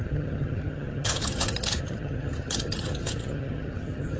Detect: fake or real fake